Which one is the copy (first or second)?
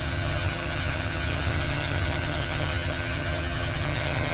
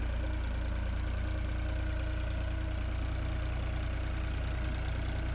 first